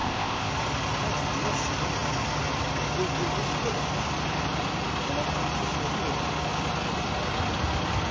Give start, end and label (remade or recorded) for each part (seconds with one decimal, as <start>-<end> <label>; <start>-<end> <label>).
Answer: 0.0-0.5 remade; 0.5-8.1 recorded